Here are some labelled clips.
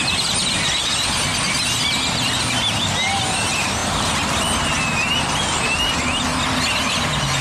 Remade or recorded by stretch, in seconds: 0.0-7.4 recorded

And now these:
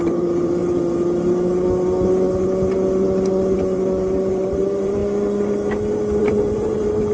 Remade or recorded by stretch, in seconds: 0.0-0.6 remade; 0.6-4.3 recorded; 4.3-5.0 remade; 5.0-6.2 recorded; 6.2-7.1 remade

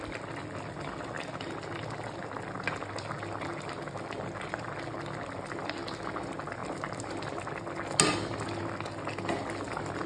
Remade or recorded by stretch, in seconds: 0.0-10.1 recorded

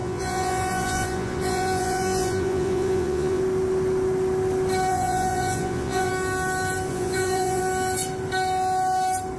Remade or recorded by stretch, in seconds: 0.0-3.4 remade; 3.4-4.9 recorded; 4.9-6.1 remade; 6.1-6.9 recorded; 6.9-7.6 remade; 7.6-9.4 recorded

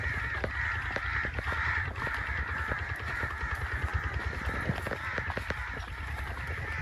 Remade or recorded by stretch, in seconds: 0.0-6.8 recorded

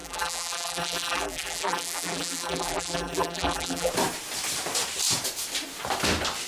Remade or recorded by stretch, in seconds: 0.0-3.9 remade; 3.9-6.5 recorded